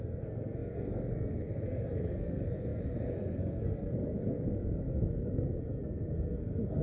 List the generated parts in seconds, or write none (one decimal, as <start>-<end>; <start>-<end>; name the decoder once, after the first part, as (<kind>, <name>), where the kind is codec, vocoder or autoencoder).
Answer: 0.0-6.8 (codec, SNAC)